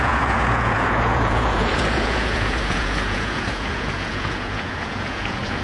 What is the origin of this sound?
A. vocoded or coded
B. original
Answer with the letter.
A